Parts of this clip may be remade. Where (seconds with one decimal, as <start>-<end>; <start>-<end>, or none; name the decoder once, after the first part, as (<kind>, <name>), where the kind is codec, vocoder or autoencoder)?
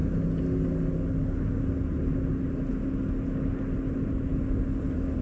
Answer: none